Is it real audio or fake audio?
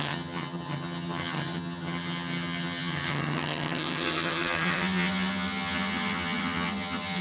fake